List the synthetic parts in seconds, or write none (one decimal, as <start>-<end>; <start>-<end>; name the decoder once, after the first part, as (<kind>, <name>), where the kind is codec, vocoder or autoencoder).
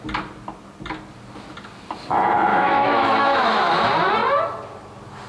2.5-3.7 (autoencoder, DAC-VAE)